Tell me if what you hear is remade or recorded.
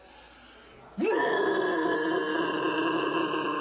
recorded